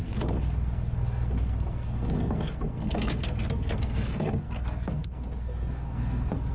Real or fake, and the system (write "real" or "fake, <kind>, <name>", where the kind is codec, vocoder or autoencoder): fake, codec, SNAC